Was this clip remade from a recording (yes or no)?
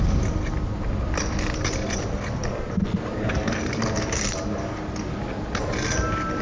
no